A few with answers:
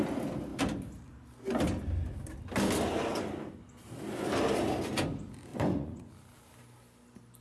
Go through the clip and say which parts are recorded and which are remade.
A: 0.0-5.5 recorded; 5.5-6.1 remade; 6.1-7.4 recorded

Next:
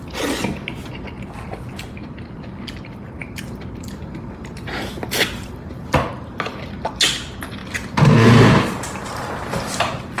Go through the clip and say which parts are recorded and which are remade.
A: 0.0-3.2 recorded; 3.2-6.1 remade; 6.1-10.2 recorded

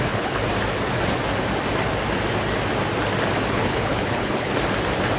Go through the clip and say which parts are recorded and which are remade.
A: 0.0-0.4 remade; 0.4-3.5 recorded; 3.5-4.5 remade; 4.5-5.2 recorded

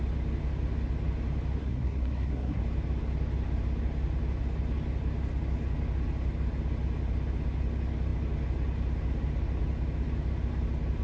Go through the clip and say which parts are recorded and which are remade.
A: 0.0-1.6 recorded; 1.6-2.6 remade; 2.6-11.0 recorded

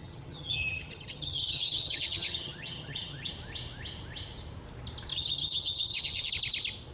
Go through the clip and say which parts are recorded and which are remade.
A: 0.0-3.3 remade; 3.3-5.1 recorded; 5.1-6.3 remade; 6.3-6.9 recorded